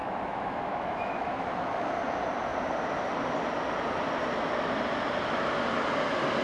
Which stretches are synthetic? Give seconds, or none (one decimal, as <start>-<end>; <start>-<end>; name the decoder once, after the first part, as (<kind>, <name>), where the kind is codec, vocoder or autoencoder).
0.0-1.9 (autoencoder, DAC-VAE)